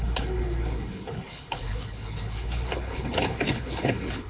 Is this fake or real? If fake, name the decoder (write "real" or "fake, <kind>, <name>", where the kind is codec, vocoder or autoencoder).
fake, codec, HILCodec